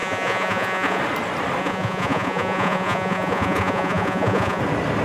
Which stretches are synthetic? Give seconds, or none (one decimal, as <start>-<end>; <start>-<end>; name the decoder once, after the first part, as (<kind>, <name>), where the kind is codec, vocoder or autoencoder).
0.0-1.0 (vocoder, Vocos); 1.6-4.6